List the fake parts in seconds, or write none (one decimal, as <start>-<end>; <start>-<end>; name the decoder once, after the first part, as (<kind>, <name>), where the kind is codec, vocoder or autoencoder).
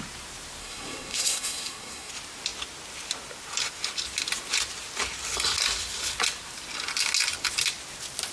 0.6-2.1 (codec, SNAC)